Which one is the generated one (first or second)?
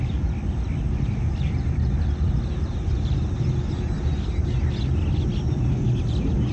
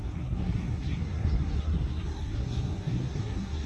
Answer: second